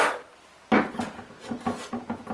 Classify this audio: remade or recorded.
recorded